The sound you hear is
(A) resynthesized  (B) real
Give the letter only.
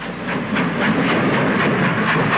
B